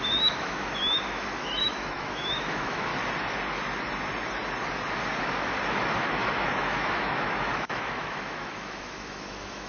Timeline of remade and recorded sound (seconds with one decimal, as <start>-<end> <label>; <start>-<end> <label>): 0.0-2.9 remade; 2.9-5.2 recorded; 5.2-9.7 remade